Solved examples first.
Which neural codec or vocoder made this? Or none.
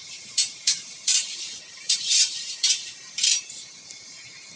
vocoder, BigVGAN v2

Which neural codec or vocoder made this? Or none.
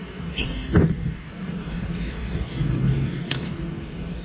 codec, DAC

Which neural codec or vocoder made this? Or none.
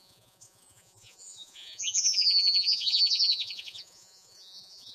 vocoder, Vocos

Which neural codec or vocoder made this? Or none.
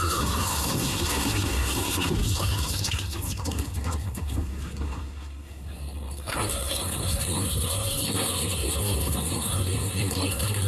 codec, SNAC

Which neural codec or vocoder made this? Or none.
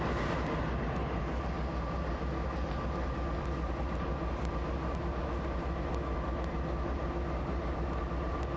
none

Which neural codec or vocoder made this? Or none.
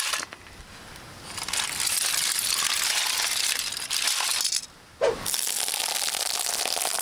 none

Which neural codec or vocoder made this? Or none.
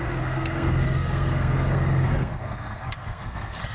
codec, SNAC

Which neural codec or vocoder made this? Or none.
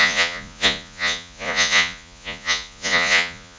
vocoder, Vocos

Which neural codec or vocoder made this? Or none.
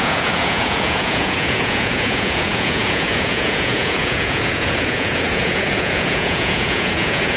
vocoder, Vocos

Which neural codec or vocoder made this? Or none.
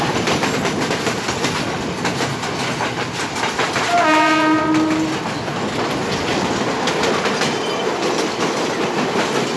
none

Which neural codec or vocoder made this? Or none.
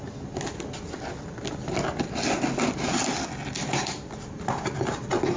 none